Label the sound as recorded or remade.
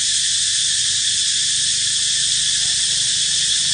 recorded